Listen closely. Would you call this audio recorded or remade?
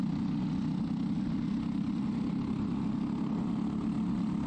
recorded